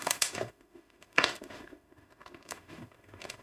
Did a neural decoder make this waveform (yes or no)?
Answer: yes